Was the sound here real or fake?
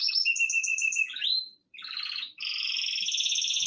fake